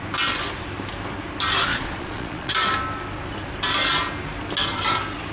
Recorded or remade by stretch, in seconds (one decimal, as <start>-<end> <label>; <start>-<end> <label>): 0.0-1.7 recorded; 1.7-2.5 remade; 2.5-5.3 recorded

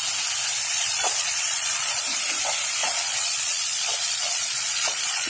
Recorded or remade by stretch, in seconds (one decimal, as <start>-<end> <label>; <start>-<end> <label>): 0.0-0.7 recorded; 0.7-2.2 remade; 2.2-2.8 recorded; 2.8-5.3 remade

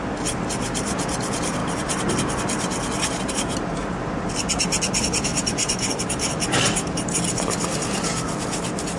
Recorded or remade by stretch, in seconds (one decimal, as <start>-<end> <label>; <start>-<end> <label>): 0.0-5.3 recorded; 5.3-6.0 remade; 6.0-9.0 recorded

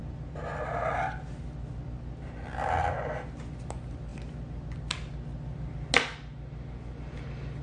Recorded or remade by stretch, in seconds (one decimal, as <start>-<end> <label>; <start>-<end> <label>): 0.0-7.6 recorded